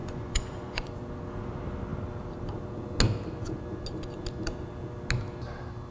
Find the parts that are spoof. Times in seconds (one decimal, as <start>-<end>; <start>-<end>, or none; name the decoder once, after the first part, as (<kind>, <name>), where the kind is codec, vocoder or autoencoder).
0.0-0.9 (vocoder, Vocos)